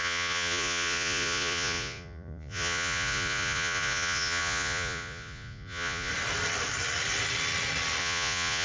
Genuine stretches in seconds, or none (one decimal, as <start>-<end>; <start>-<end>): 6.1-8.0